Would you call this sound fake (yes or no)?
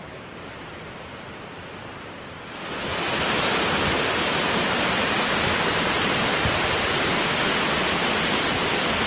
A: no